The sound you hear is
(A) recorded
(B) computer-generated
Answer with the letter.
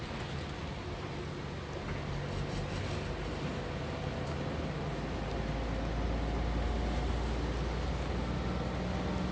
A